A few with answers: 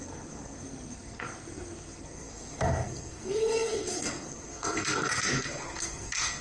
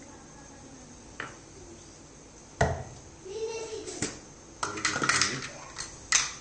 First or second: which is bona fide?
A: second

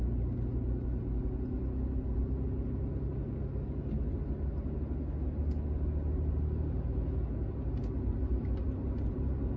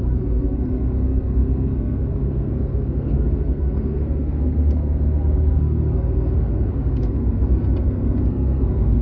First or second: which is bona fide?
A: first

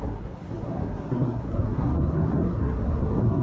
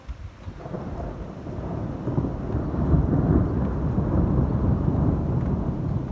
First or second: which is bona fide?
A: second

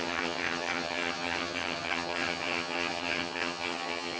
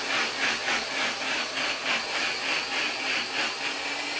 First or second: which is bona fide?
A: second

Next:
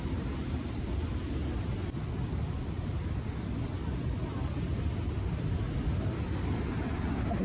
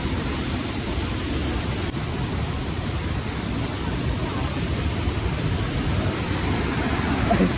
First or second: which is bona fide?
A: first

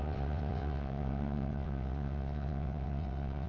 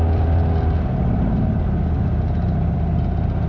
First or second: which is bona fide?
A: second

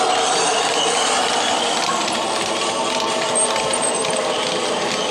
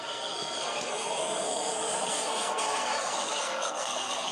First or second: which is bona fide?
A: first